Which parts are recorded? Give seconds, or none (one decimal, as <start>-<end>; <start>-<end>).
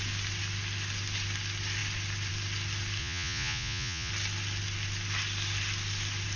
0.0-3.0; 4.1-6.4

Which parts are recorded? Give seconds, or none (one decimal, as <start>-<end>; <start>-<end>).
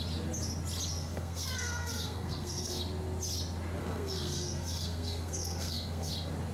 0.0-1.0; 2.8-3.8; 6.1-6.5